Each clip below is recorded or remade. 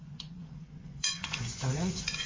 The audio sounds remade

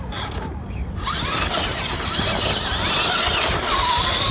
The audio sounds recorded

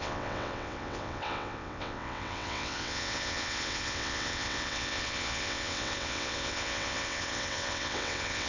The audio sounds remade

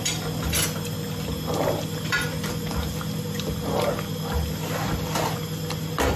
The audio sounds recorded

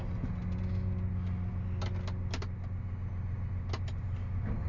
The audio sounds recorded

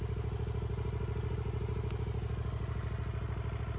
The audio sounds recorded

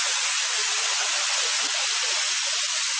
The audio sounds recorded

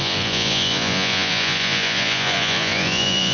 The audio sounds remade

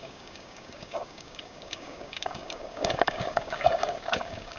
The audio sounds remade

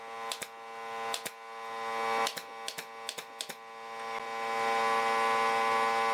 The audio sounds recorded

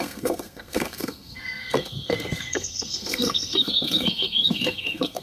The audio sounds remade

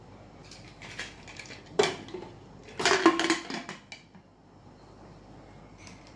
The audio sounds recorded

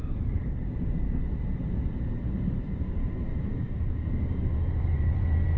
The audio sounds remade